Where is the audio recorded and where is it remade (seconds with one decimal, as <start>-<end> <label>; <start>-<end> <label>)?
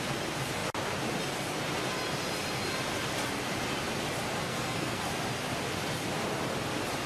0.0-4.4 recorded; 4.4-5.0 remade; 5.0-7.1 recorded